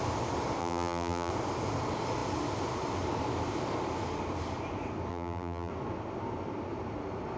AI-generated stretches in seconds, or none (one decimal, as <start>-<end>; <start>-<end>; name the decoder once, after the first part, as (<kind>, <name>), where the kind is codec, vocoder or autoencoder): 0.6-1.3 (vocoder, BigVGAN v2); 5.1-5.7